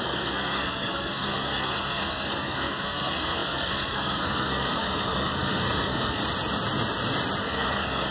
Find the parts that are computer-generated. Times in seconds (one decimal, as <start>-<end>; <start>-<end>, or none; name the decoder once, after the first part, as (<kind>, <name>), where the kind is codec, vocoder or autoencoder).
0.0-6.2 (codec, SNAC); 7.4-8.1